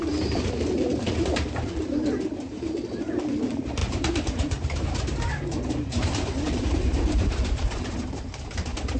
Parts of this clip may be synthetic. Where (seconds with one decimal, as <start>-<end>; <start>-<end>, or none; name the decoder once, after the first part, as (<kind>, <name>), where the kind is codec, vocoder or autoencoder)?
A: 0.0-9.0 (vocoder, BigVGAN v2)